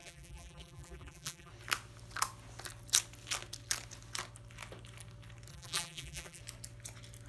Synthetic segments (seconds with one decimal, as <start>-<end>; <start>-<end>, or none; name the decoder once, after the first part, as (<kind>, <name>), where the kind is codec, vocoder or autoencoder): 0.0-1.5 (vocoder, BigVGAN v2); 5.5-6.4